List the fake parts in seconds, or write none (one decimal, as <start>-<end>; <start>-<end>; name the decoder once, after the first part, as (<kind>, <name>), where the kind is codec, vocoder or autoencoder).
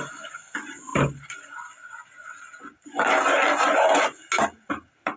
none